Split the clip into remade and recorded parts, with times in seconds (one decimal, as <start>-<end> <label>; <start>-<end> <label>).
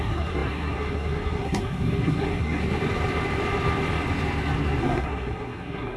0.0-2.6 remade; 2.6-4.8 recorded; 4.8-6.0 remade